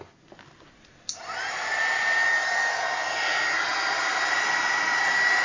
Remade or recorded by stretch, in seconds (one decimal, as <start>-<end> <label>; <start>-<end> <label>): 0.0-5.4 recorded